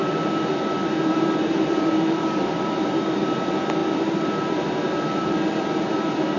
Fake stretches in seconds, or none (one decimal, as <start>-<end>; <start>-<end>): 0.0-6.4